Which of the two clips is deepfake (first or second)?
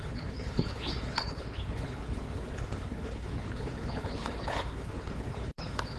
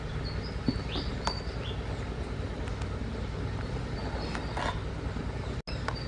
first